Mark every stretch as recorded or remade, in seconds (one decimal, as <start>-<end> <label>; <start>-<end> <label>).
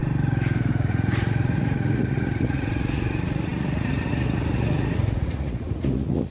0.0-0.8 recorded; 0.8-6.3 remade